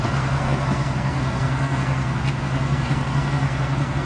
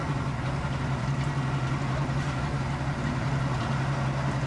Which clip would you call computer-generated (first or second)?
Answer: first